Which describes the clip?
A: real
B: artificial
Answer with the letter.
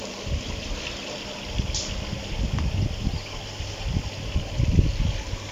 A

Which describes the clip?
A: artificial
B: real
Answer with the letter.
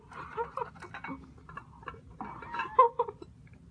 B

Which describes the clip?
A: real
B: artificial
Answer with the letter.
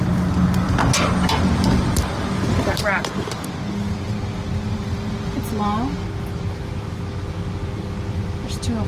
A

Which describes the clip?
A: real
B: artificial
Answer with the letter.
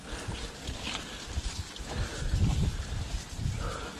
A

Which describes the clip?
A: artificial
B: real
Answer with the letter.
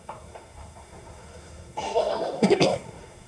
A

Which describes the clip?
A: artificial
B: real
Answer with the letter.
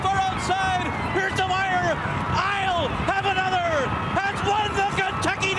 B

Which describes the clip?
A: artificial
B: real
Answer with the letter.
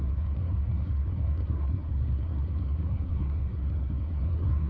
A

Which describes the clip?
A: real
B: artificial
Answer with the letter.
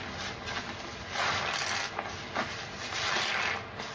A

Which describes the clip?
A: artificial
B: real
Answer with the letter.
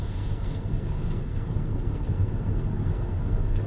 A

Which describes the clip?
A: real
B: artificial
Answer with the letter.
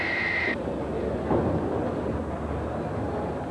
A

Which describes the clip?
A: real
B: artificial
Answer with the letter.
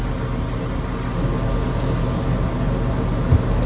A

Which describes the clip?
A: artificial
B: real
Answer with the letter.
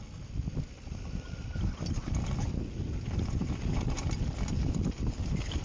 B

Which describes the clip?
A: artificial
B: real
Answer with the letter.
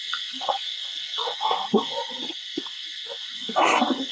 A